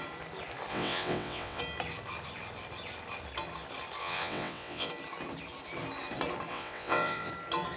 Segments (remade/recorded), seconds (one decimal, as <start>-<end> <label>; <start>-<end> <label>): 0.0-0.7 recorded; 0.7-1.6 remade; 1.6-4.0 recorded; 4.0-4.9 remade; 4.9-6.5 recorded; 6.5-7.3 remade; 7.3-7.8 recorded